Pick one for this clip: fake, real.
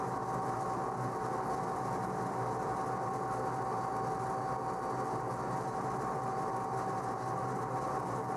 real